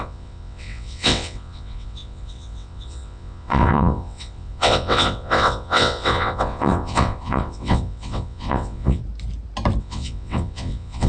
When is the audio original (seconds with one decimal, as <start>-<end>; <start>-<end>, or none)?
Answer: 9.0-9.8